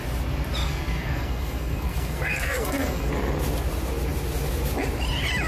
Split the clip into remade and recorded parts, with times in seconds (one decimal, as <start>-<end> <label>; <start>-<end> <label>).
0.0-0.6 recorded; 0.6-3.1 remade; 3.1-5.5 recorded